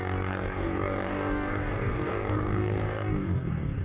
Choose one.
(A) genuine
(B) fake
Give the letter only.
B